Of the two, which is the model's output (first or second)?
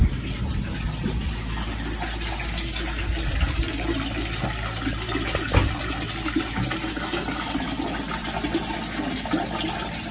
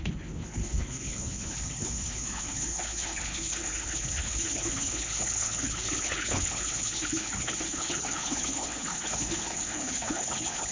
second